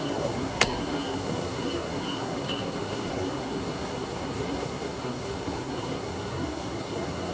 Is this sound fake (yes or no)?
yes